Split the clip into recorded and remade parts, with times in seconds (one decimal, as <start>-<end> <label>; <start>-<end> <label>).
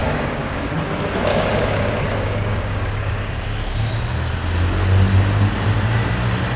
0.0-0.7 remade; 0.7-1.3 recorded; 1.3-3.9 remade; 3.9-6.6 recorded